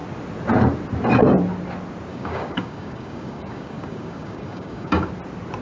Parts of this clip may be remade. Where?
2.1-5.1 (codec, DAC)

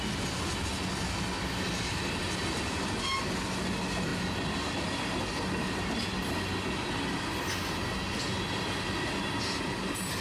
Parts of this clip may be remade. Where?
none

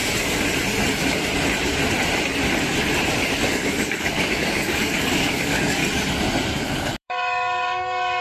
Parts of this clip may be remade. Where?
3.3-5.8 (codec, DAC); 6.5-8.2

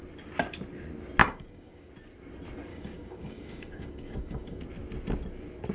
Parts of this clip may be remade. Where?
1.2-1.9 (codec, DAC); 2.7-4.6